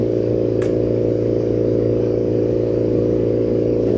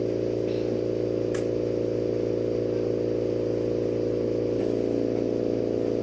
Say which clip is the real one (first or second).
second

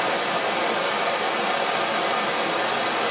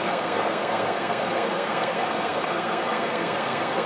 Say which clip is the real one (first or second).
first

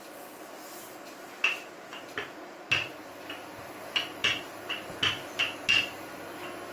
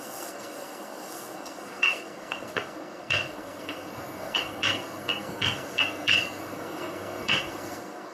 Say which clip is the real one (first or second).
first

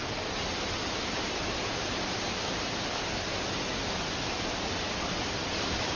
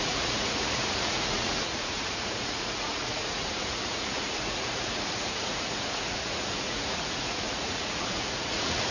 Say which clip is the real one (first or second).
first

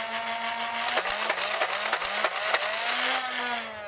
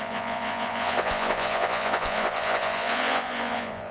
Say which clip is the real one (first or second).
first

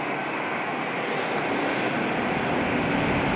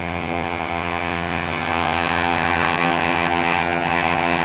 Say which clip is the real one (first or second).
first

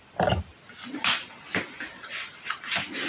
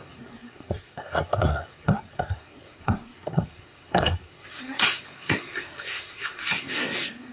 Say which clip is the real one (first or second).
first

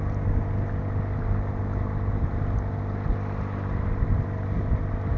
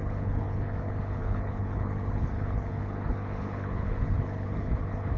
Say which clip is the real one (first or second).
first